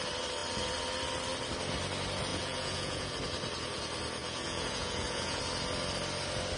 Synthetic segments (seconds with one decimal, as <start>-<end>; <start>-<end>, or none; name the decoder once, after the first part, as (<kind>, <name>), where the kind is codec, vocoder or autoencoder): 2.3-3.1 (vocoder, Vocos); 4.2-5.4